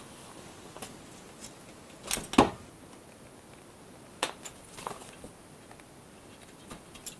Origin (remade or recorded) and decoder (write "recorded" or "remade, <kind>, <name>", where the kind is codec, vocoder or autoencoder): recorded